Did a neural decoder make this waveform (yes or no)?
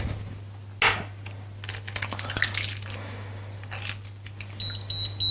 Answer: no